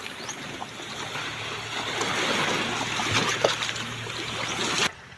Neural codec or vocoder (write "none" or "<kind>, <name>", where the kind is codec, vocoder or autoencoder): none